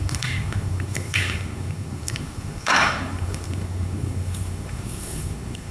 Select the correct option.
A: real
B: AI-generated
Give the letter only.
B